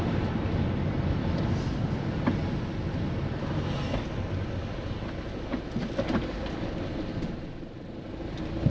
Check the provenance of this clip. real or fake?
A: real